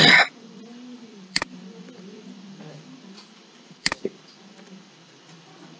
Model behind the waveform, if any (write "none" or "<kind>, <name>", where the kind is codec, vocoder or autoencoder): vocoder, BigVGAN v2